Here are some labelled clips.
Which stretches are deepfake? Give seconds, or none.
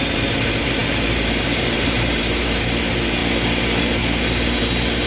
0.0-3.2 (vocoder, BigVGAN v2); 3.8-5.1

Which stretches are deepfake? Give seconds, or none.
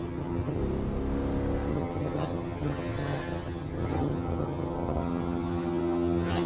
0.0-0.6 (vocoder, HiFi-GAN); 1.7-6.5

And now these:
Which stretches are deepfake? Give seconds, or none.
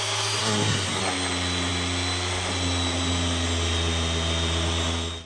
0.4-1.0 (codec, SNAC)